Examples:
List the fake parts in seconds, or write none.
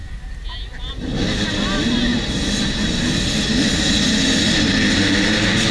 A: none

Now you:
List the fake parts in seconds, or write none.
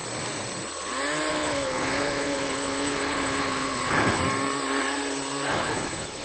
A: 1.3-4.2 (codec, HILCodec); 5.5-6.2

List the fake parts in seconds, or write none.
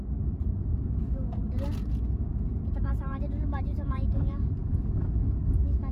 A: 0.7-1.4 (vocoder, Vocos); 1.9-5.4